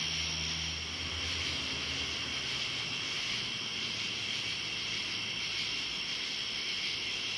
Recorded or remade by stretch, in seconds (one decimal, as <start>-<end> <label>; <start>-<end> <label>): 0.0-2.2 recorded; 2.2-6.2 remade; 6.2-7.4 recorded